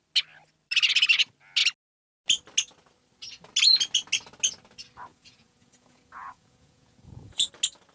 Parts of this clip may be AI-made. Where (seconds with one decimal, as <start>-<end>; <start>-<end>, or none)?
5.1-7.5